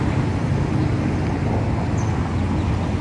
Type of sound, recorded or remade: recorded